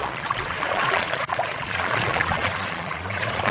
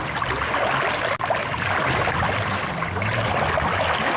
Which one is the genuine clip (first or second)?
second